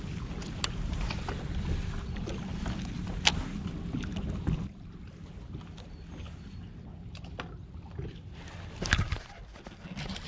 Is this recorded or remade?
recorded